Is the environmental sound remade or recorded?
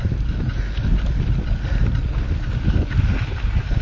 recorded